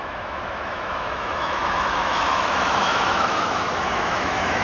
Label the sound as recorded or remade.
remade